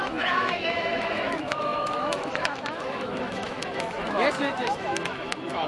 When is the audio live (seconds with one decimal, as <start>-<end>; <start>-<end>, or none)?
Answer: none